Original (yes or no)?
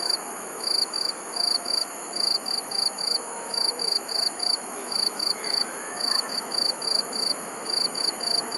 no